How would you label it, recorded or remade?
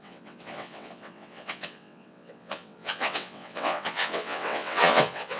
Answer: remade